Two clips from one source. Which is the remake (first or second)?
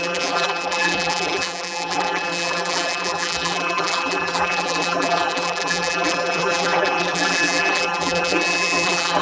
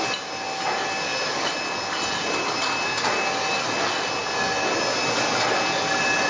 first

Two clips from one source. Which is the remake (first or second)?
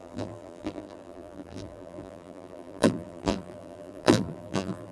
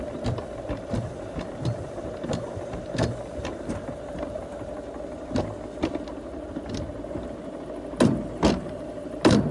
first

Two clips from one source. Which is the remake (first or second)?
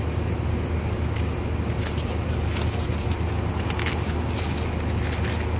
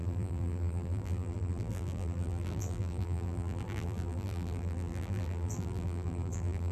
second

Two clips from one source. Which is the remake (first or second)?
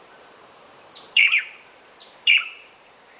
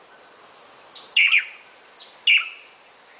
first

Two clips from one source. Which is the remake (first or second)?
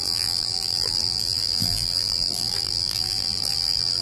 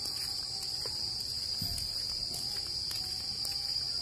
first